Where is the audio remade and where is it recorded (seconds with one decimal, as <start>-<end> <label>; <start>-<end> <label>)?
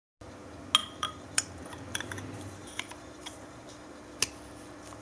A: 0.0-0.8 recorded; 0.8-1.6 remade; 1.6-2.6 recorded; 2.6-4.0 remade; 4.0-5.0 recorded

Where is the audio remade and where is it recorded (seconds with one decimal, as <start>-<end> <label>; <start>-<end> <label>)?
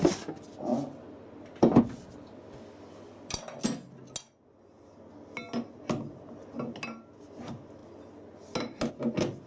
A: 0.0-9.5 recorded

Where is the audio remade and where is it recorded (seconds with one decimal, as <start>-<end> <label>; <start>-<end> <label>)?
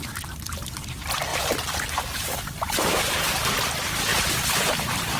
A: 0.0-1.3 remade; 1.3-3.1 recorded; 3.1-4.1 remade; 4.1-4.7 recorded; 4.7-5.2 remade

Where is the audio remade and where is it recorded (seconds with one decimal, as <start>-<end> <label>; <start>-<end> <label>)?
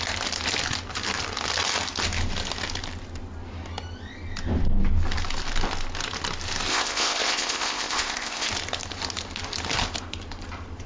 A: 0.0-6.7 recorded; 6.7-8.5 remade; 8.5-10.9 recorded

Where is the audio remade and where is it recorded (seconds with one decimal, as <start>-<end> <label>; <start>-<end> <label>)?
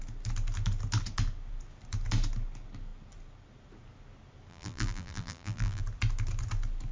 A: 0.0-4.5 recorded; 4.5-5.8 remade; 5.8-6.9 recorded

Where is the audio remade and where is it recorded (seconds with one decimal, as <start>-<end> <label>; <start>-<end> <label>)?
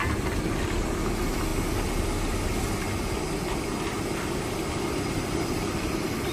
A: 0.0-1.5 remade; 1.5-5.3 recorded; 5.3-6.3 remade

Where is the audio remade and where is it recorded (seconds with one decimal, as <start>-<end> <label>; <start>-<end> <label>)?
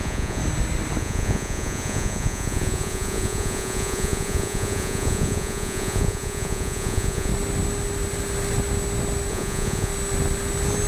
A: 0.0-0.4 remade; 0.4-1.0 recorded; 1.0-7.3 remade; 7.3-9.3 recorded; 9.3-9.9 remade; 9.9-10.9 recorded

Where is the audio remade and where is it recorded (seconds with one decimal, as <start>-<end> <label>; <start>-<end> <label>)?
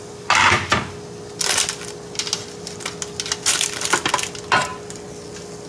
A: 0.0-5.7 recorded